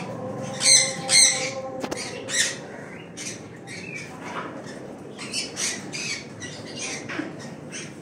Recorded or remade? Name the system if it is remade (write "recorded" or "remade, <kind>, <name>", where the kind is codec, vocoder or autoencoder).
remade, vocoder, BigVGAN v2